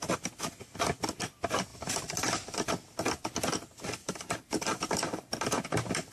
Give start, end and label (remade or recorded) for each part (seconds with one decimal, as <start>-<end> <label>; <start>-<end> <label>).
0.0-1.7 recorded; 1.7-2.7 remade; 2.7-4.0 recorded; 4.0-6.1 remade